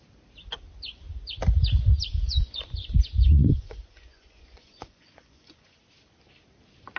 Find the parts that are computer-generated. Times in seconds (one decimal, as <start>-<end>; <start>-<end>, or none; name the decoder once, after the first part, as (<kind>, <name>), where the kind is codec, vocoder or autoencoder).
2.1-5.8 (vocoder, Vocos)